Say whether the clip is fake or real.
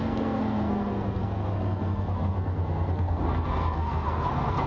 fake